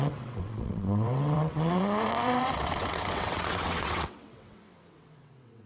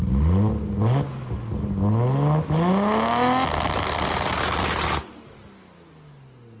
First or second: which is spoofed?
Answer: first